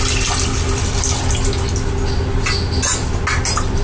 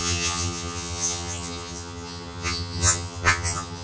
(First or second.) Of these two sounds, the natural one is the first